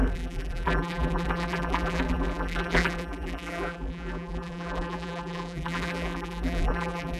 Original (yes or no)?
no